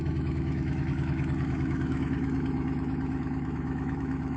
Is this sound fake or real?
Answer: fake